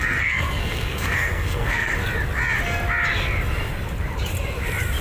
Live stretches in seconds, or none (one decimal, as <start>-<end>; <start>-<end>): 1.9-5.0